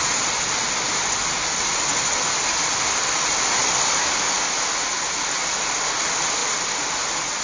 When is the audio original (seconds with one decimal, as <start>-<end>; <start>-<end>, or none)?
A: 0.0-7.4